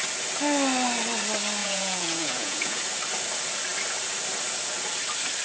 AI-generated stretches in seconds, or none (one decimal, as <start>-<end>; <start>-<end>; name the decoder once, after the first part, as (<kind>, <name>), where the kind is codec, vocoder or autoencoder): 1.6-2.8 (vocoder, Vocos)